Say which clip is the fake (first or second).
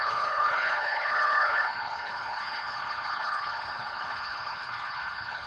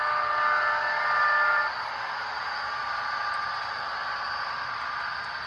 first